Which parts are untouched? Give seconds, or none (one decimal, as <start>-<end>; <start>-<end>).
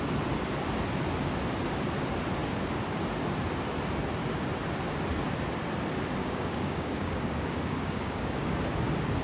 0.0-6.2; 8.6-9.2